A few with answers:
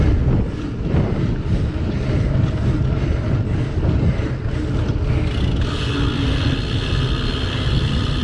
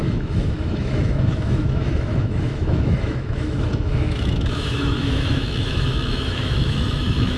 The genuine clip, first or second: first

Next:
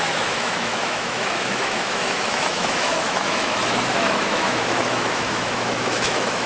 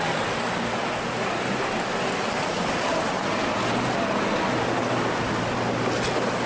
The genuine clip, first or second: second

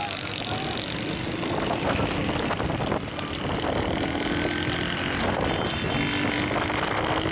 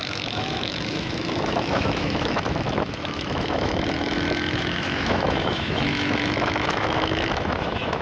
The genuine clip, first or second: first